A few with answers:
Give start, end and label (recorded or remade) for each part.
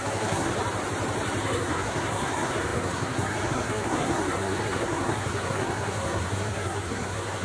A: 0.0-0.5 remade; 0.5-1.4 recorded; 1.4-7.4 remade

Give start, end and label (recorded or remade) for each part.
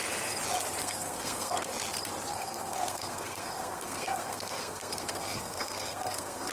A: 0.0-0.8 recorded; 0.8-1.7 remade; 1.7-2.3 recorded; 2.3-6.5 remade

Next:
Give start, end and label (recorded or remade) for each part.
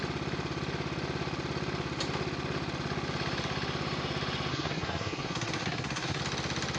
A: 0.0-4.5 recorded; 4.5-6.2 remade; 6.2-6.8 recorded